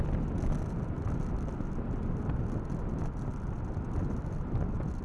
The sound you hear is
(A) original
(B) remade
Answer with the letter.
A